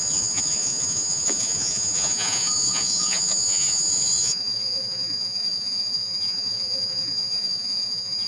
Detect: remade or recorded remade